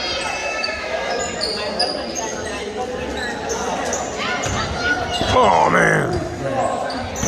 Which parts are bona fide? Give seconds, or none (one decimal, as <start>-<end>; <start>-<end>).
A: 0.0-0.4; 1.2-7.3